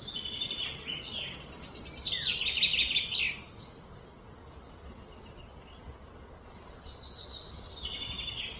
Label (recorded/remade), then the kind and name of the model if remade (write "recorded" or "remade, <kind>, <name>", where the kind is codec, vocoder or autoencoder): recorded